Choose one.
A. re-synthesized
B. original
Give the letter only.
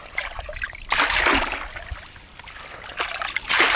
B